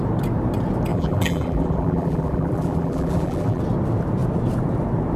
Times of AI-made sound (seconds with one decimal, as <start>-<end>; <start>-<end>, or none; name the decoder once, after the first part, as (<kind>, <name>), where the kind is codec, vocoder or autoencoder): 0.9-3.6 (vocoder, BigVGAN v2)

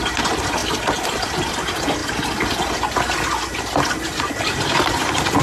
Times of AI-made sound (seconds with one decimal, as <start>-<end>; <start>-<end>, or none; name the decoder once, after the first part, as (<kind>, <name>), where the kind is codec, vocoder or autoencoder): 0.6-1.3 (vocoder, BigVGAN v2)

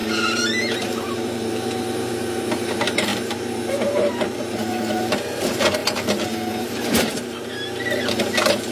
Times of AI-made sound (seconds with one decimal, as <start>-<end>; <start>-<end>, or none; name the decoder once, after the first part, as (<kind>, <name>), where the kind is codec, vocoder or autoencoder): 0.0-5.8 (vocoder, BigVGAN v2); 6.5-8.7

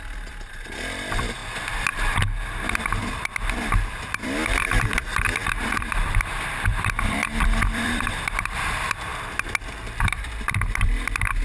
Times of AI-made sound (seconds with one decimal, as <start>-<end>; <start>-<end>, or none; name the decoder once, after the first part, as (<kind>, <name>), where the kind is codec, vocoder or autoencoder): 0.0-1.4 (vocoder, BigVGAN v2); 2.8-9.1; 9.8-11.4

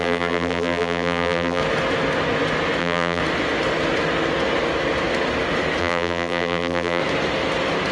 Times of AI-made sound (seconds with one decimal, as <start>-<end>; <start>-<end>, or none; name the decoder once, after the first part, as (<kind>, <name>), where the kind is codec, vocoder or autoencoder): 0.0-1.6 (vocoder, BigVGAN v2); 2.8-3.2; 5.8-7.0

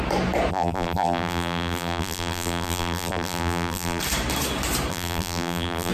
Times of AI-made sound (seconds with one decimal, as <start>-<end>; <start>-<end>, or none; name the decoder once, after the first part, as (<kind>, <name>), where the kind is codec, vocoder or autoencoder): 0.5-4.0 (vocoder, BigVGAN v2); 4.9-5.9